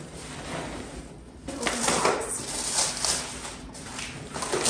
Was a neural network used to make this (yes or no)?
no